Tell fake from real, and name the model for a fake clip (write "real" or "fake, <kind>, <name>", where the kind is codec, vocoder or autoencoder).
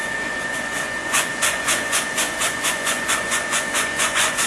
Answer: fake, vocoder, Vocos